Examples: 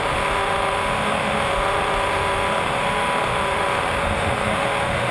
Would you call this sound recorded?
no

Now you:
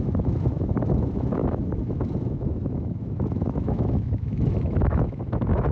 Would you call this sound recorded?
no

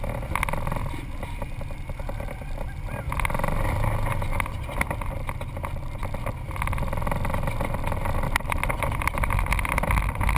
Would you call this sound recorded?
yes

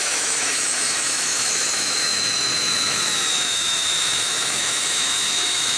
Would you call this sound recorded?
no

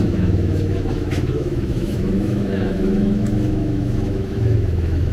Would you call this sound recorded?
no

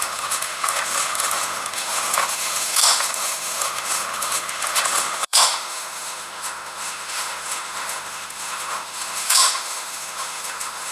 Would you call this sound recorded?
no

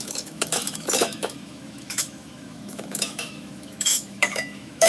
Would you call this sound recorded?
no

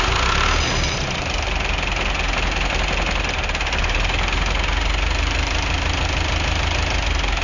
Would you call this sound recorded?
yes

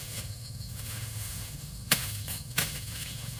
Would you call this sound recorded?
no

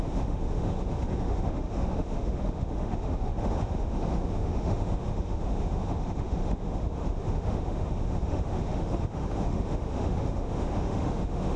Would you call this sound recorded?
no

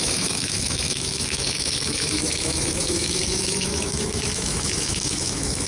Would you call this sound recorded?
no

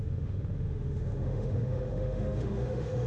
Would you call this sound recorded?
no